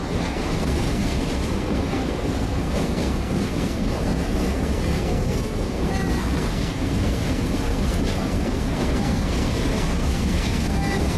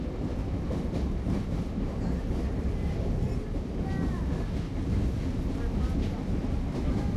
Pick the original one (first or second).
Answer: second